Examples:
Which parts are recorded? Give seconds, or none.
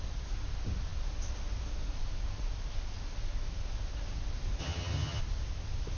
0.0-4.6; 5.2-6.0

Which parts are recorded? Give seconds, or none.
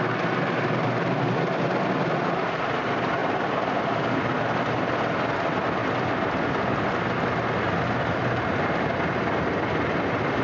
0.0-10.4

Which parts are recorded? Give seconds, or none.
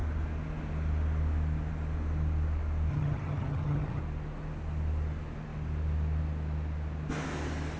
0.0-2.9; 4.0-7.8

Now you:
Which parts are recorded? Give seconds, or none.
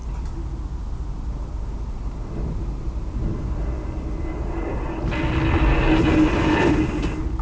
0.0-7.4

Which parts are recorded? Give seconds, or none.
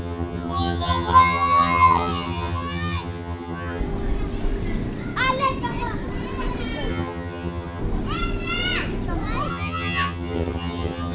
3.8-6.9; 7.8-9.5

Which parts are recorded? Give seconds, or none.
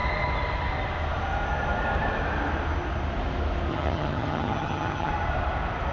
0.0-3.7; 5.1-5.9